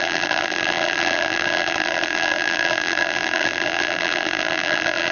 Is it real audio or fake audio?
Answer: fake